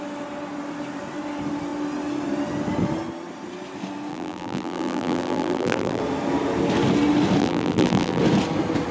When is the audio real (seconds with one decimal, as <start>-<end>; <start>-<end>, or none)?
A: 0.0-4.1; 6.0-7.4; 8.2-8.9